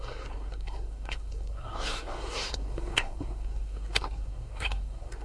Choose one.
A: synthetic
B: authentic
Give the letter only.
A